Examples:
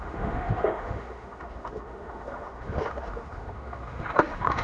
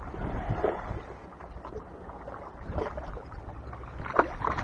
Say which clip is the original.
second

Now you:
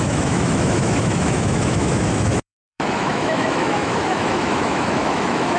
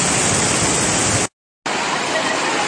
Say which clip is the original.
second